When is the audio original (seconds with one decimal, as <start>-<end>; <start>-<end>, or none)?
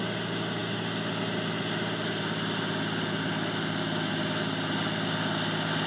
0.0-5.9